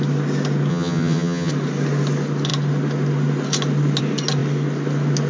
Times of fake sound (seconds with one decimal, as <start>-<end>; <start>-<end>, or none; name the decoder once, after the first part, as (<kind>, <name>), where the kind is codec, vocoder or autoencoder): 0.7-1.5 (vocoder, HiFi-GAN)